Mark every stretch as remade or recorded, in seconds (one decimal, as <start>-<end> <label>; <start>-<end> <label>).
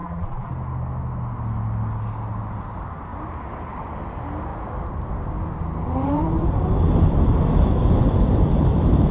0.0-0.5 remade; 0.5-9.1 recorded